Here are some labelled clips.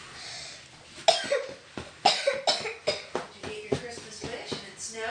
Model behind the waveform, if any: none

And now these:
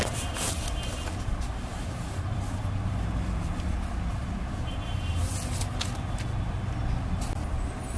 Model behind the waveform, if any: none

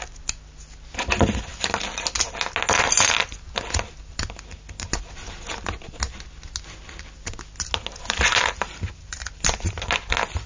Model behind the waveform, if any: none